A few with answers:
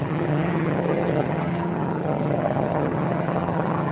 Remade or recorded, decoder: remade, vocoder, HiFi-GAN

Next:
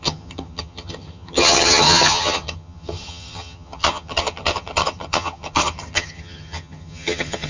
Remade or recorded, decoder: remade, vocoder, HiFi-GAN